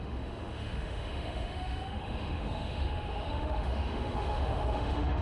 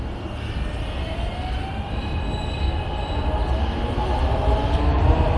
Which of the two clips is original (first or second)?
second